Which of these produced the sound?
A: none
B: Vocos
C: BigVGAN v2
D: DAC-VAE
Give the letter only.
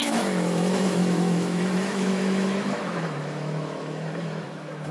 D